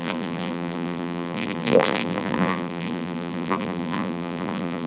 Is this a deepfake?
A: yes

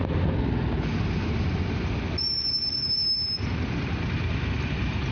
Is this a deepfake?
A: no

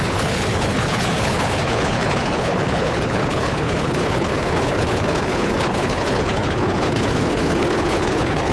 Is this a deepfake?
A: yes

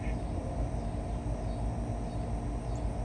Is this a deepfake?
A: no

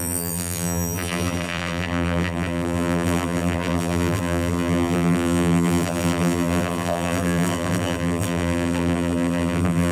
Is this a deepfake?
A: yes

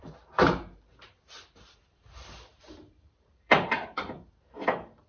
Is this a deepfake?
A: yes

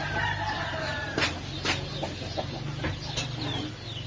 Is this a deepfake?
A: no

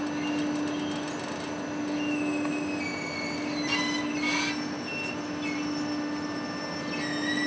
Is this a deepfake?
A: no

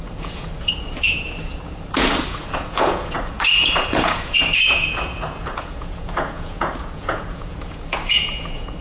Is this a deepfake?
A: yes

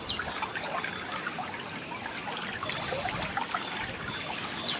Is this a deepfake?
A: no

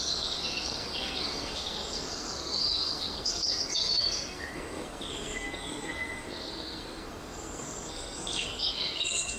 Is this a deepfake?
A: yes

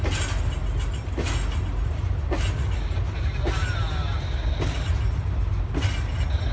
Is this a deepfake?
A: no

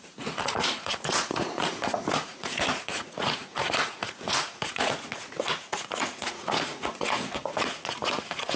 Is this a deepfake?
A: yes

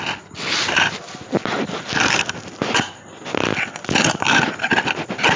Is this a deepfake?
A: no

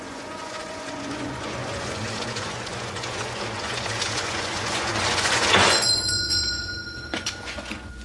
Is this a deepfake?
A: yes